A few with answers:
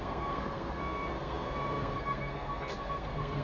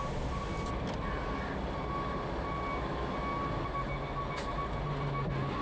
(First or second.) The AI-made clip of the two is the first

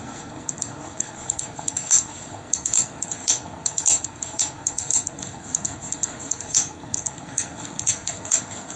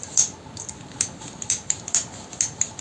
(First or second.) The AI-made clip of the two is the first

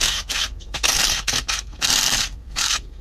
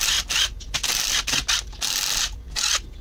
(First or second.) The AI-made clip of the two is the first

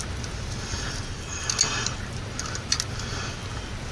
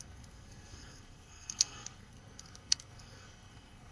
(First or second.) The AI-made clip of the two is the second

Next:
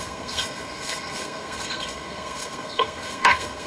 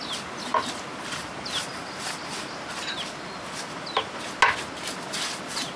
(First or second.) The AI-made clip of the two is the first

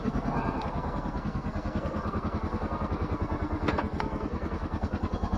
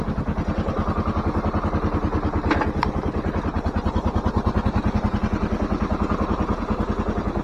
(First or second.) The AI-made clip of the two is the first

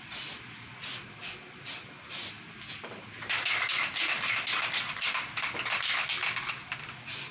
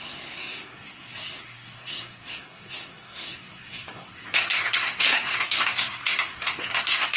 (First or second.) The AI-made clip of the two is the second